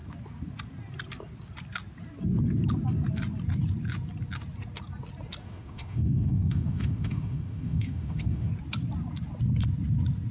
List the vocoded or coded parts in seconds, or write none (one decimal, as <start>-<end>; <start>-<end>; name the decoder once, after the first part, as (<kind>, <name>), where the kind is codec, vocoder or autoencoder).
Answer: 5.4-8.5 (autoencoder, DAC-VAE)